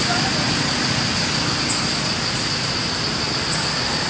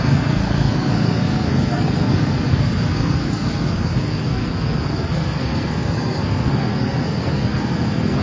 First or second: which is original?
first